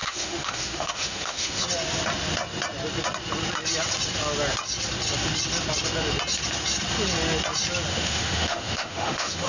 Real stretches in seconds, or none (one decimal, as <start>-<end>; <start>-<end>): 1.6-7.9